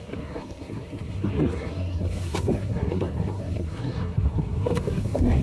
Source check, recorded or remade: remade